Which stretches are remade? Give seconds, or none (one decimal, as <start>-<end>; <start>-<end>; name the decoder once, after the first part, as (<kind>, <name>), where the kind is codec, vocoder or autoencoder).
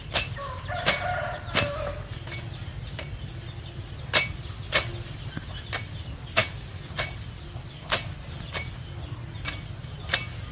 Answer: none